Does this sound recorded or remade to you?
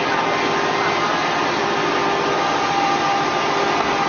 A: recorded